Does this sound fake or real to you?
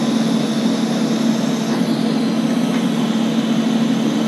real